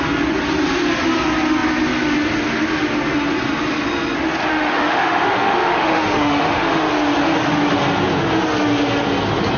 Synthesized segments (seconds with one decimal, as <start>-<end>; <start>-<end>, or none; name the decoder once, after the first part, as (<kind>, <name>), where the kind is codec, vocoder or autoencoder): 4.5-6.9 (autoencoder, DAC-VAE)